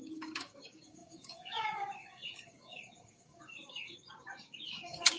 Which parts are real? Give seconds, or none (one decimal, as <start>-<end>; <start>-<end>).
none